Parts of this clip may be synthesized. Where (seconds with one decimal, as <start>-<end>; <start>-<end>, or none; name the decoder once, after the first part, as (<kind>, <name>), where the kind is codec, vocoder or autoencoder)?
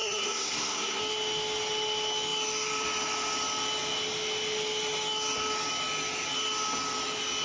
0.0-1.0 (codec, SNAC)